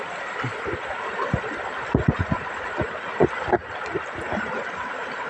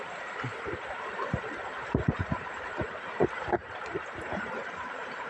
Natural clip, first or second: first